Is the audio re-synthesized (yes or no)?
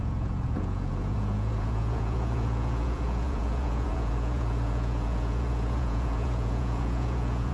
yes